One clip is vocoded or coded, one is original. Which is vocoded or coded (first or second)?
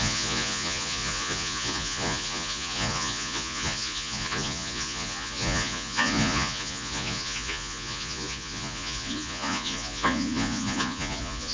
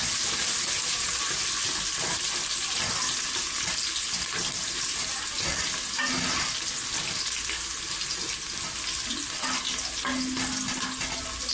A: first